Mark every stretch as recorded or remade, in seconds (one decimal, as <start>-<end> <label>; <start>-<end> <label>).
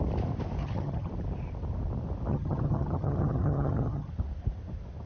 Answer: 0.0-0.6 recorded; 0.6-1.1 remade; 1.1-2.3 recorded; 2.3-4.1 remade; 4.1-5.1 recorded